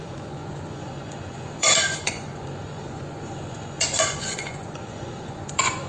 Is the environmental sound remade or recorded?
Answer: remade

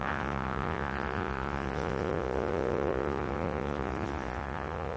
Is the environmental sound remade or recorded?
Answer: remade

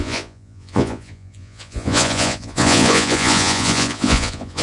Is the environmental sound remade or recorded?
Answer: remade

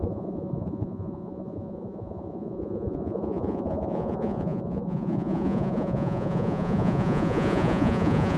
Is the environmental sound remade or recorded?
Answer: remade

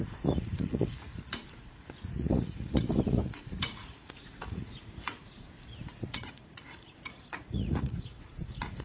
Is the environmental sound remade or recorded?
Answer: remade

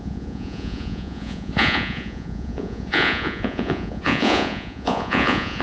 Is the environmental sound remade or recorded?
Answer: remade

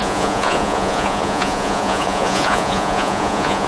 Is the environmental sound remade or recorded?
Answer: remade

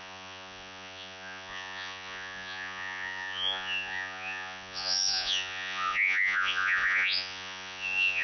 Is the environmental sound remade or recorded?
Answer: remade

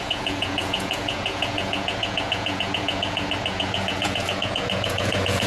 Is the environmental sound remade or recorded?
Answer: remade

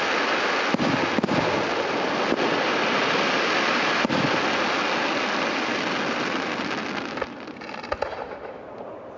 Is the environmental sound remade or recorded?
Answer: recorded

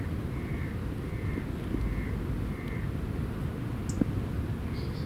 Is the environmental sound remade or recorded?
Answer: recorded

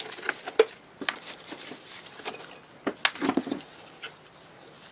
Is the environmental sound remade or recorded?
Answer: recorded